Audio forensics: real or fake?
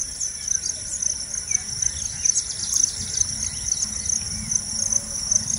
real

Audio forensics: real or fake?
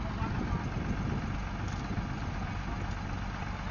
real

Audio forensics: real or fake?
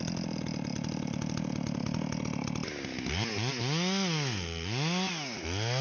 real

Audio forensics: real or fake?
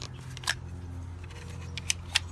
real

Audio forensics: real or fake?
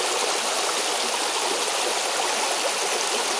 real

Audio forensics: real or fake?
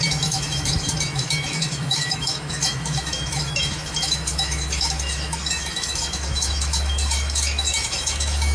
fake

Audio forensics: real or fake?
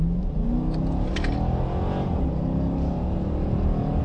real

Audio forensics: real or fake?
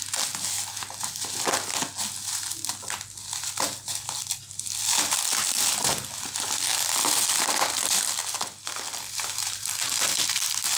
real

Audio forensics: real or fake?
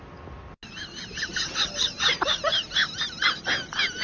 real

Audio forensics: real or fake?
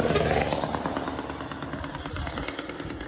real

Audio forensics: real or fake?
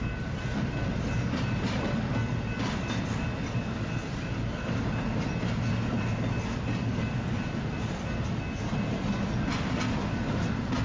real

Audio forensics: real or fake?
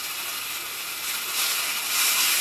real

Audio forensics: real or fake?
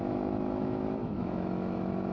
fake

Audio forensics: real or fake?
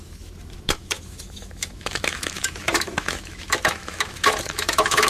fake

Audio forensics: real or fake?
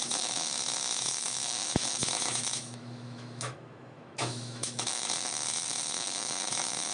fake